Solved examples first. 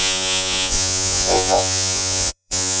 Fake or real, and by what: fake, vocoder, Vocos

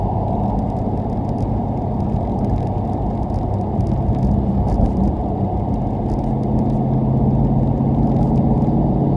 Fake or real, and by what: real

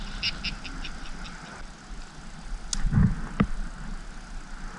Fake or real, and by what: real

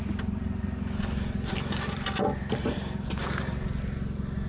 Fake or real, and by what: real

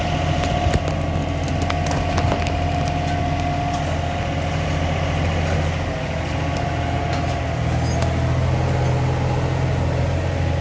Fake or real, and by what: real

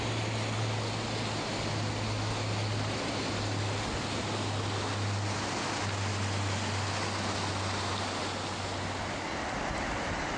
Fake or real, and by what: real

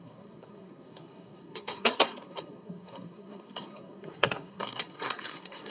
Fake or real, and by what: fake, codec, SNAC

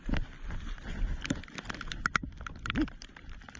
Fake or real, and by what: real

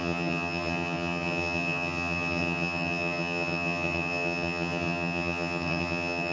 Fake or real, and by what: fake, vocoder, HiFi-GAN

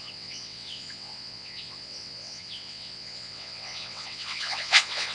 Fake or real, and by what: fake, vocoder, WaveNeXt